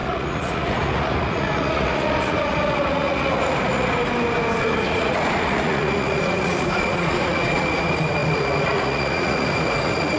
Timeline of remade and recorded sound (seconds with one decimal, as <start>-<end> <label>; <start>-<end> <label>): 0.0-4.0 remade; 4.0-4.6 recorded; 4.6-10.2 remade